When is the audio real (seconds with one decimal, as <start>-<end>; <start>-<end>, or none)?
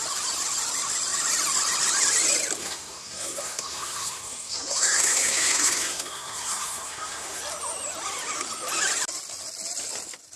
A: 0.0-2.6; 7.4-10.4